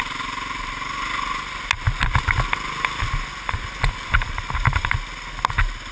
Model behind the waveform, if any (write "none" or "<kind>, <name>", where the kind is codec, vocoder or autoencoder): none